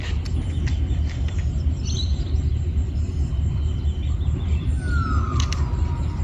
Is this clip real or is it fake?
real